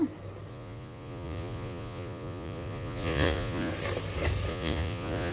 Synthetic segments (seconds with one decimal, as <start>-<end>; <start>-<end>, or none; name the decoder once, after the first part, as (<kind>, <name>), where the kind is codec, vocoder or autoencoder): 0.5-3.7 (vocoder, Vocos); 4.5-5.3